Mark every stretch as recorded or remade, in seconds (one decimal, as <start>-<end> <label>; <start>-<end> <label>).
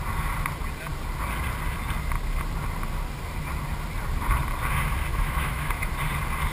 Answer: 0.0-5.1 recorded; 5.1-5.9 remade; 5.9-6.5 recorded